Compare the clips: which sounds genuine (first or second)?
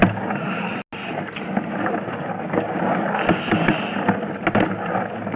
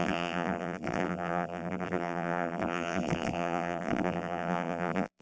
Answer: first